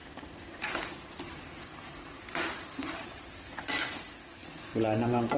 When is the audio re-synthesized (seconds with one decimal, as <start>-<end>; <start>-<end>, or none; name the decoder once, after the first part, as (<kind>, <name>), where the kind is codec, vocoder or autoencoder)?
0.0-3.2 (vocoder, BigVGAN v2); 4.7-5.4